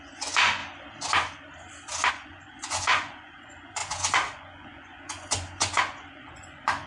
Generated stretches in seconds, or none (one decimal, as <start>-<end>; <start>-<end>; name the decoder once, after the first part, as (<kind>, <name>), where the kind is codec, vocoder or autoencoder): 0.0-0.6 (vocoder, Vocos); 2.1-6.9